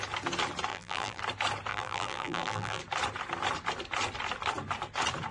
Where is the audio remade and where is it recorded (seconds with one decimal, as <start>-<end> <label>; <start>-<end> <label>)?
0.0-0.7 recorded; 0.7-1.2 remade; 1.2-1.7 recorded; 1.7-2.8 remade; 2.8-5.3 recorded